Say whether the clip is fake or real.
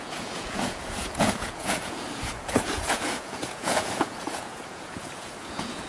fake